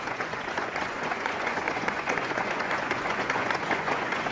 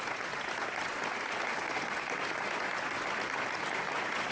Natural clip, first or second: second